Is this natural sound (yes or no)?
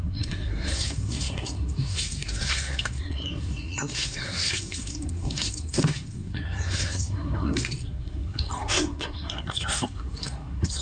no